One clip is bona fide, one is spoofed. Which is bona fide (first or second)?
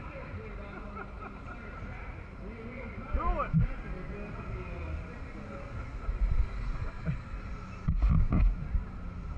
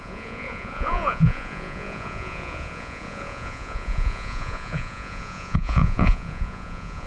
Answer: first